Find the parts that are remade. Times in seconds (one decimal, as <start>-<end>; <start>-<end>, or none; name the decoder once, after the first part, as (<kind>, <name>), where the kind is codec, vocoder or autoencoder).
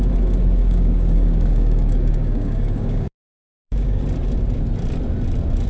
0.6-4.0 (codec, DAC)